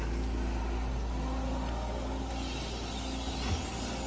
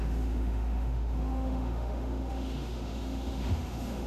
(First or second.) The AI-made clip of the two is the second